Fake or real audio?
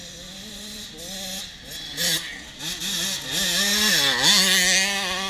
real